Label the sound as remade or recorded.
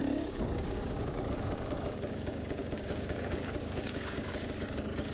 remade